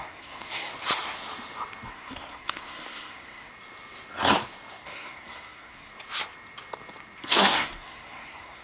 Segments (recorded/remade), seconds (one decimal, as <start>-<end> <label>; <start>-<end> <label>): 0.0-0.7 remade; 0.7-1.9 recorded; 1.9-3.5 remade; 3.5-4.8 recorded; 4.8-5.9 remade; 5.9-7.2 recorded; 7.2-8.6 remade